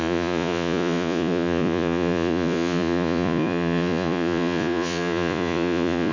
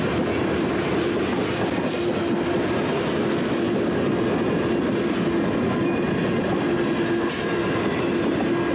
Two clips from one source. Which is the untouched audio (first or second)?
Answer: second